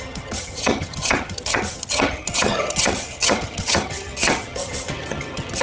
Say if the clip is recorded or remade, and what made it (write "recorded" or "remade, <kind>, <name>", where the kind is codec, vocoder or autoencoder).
remade, vocoder, HiFi-GAN